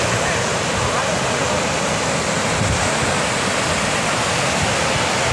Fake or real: real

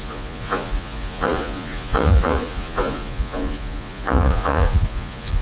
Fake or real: fake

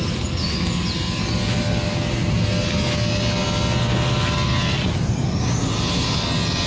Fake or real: real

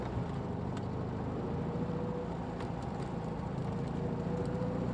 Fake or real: real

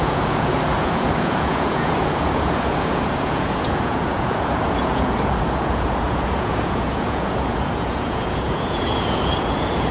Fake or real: fake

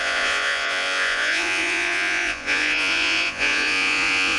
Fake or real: fake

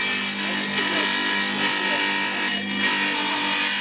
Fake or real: real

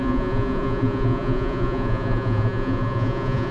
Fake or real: fake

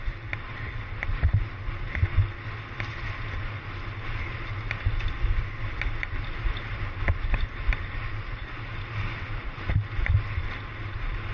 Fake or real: real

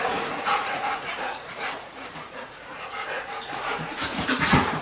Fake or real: fake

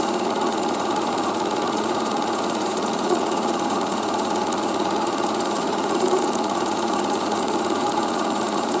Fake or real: fake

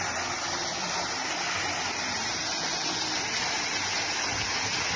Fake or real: real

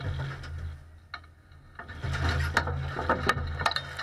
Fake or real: real